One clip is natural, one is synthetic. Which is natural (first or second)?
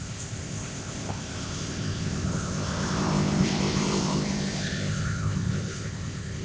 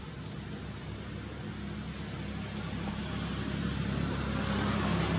second